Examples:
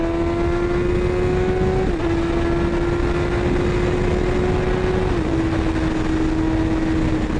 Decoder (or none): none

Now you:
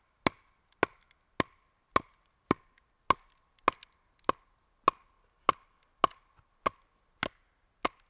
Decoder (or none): none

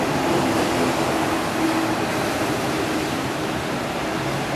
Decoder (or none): none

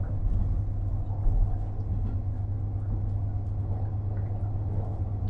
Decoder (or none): none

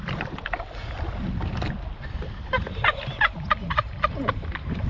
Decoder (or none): none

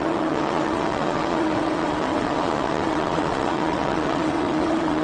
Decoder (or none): vocoder, WaveNeXt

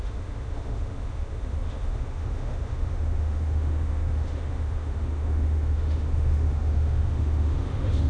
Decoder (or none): autoencoder, DAC-VAE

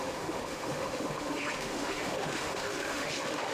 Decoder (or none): autoencoder, DAC-VAE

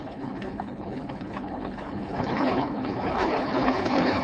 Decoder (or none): codec, HILCodec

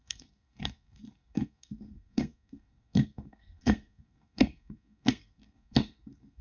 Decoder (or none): codec, SNAC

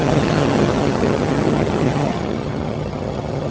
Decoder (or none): vocoder, HiFi-GAN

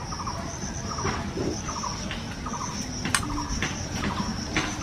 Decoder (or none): none